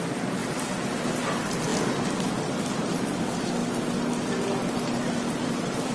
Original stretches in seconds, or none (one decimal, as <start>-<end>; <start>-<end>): 0.4-1.0; 1.7-2.4; 3.6-4.6